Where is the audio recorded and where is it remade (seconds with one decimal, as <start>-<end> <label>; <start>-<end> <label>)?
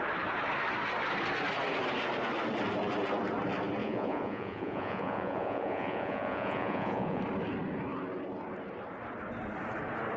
0.0-3.8 recorded; 3.8-7.2 remade; 7.2-10.2 recorded